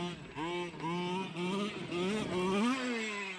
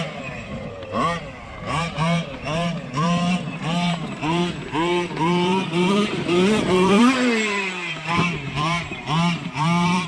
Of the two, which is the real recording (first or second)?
first